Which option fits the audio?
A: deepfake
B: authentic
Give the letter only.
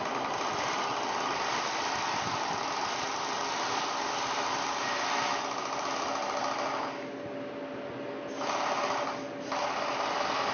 B